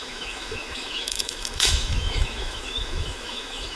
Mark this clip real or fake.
fake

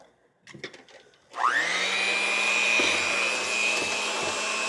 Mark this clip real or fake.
real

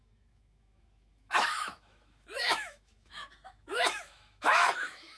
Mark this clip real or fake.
fake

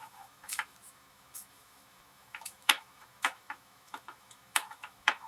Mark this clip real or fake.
fake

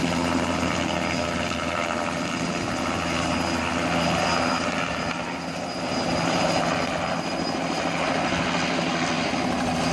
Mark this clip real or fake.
real